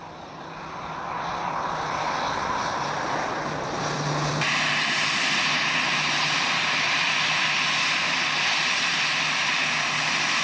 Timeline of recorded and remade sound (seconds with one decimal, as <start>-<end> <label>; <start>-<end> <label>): 0.0-10.4 recorded